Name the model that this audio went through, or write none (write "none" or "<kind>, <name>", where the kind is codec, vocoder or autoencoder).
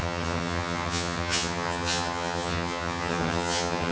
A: vocoder, HiFi-GAN